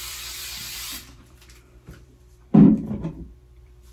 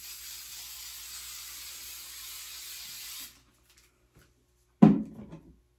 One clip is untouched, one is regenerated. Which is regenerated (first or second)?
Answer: first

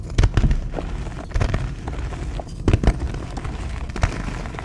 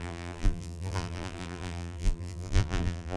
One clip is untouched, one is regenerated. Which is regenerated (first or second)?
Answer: second